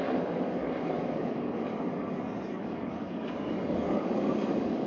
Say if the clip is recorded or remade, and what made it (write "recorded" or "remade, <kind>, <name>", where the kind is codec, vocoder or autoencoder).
remade, codec, DAC